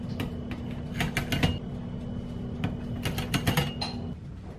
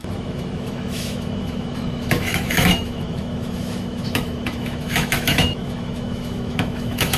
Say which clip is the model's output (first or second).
second